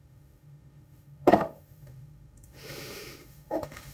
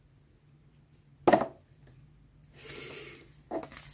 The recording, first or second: second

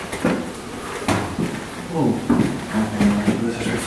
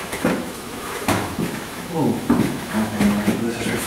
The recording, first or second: first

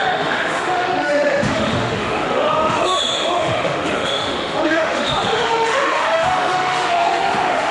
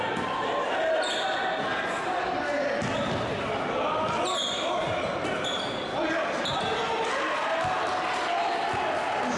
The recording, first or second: second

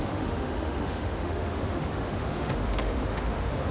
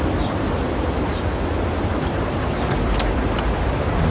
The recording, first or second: second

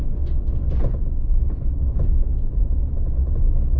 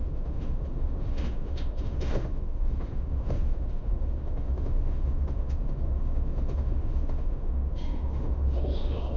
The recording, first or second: first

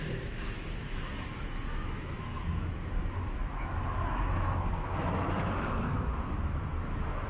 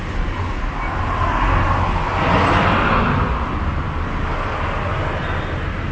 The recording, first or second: second